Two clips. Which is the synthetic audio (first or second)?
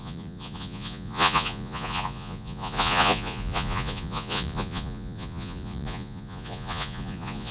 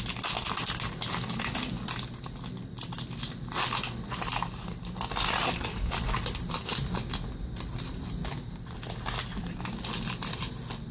first